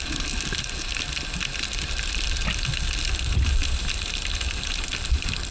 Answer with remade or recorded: recorded